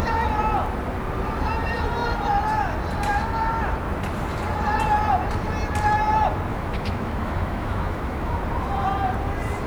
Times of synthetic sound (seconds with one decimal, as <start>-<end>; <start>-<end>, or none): 6.5-8.4